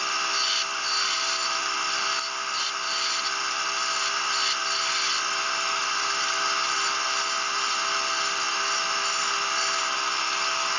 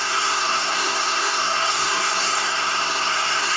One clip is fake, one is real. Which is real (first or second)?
first